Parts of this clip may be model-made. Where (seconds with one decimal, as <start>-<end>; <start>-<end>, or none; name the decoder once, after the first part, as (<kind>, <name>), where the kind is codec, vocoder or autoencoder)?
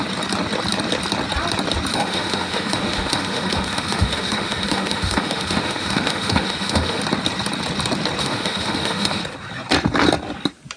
1.9-7.0 (autoencoder, DAC-VAE); 8.2-9.2